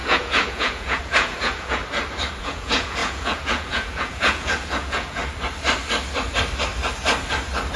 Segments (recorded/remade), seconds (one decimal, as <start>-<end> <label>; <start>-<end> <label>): 0.0-1.8 remade; 1.8-2.4 recorded; 2.4-5.2 remade; 5.2-7.8 recorded